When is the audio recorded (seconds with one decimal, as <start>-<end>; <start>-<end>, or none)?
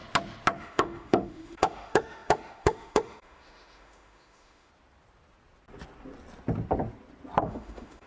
0.0-0.6; 4.7-7.4